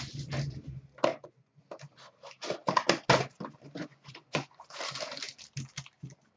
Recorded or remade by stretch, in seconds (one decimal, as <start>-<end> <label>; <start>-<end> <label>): 0.0-1.1 recorded; 1.1-1.6 remade; 1.6-3.8 recorded; 3.8-4.6 remade; 4.6-6.4 recorded